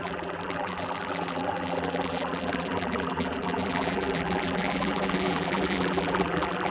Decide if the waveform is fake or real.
fake